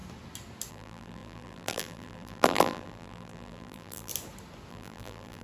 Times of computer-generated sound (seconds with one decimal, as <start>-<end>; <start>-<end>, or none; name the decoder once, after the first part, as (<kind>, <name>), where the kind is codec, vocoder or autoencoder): 0.7-4.1 (vocoder, BigVGAN v2); 4.7-5.4